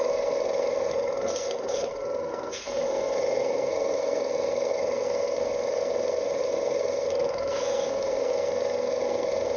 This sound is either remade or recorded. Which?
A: remade